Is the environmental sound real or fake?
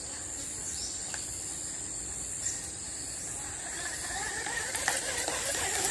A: fake